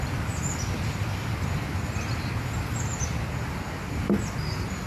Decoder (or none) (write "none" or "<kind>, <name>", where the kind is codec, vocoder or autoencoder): none